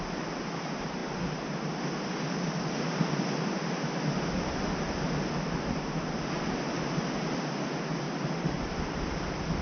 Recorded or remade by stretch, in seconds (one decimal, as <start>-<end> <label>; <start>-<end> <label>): 0.0-9.6 recorded